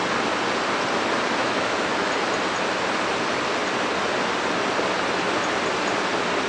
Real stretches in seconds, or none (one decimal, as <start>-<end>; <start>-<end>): 0.0-1.4; 2.1-6.5